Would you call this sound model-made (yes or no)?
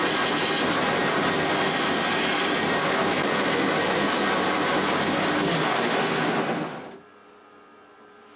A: no